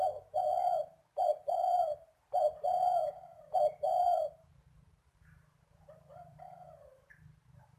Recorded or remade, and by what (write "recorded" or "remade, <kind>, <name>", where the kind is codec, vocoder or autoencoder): remade, vocoder, BigVGAN v2